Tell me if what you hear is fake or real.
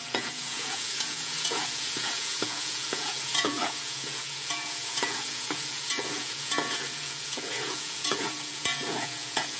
fake